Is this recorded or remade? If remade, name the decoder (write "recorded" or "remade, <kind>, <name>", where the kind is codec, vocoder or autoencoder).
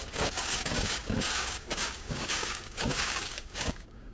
remade, codec, DAC